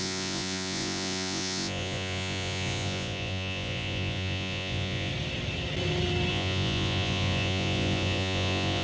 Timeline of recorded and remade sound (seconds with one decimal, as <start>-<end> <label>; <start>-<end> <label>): 0.0-5.1 remade; 5.1-6.3 recorded; 6.3-8.8 remade